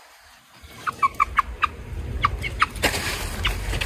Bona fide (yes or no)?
no